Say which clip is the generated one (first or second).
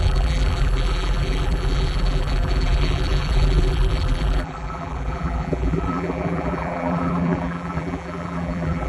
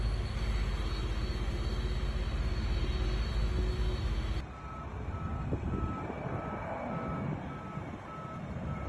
first